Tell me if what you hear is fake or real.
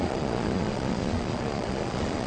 fake